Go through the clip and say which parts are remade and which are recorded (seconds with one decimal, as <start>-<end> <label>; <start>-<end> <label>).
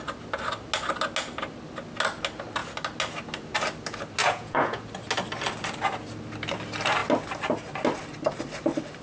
0.0-4.2 recorded; 4.2-4.8 remade; 4.8-9.0 recorded